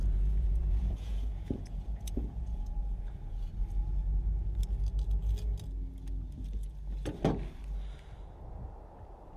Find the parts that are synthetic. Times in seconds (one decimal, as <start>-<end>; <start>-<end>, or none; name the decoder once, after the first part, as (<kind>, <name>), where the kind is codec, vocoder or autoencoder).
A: 0.0-3.3 (vocoder, Vocos)